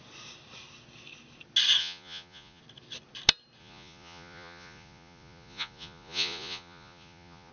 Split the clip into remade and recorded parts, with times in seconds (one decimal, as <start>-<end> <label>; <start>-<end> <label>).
0.0-1.8 recorded; 1.8-2.6 remade; 2.6-3.6 recorded; 3.6-7.5 remade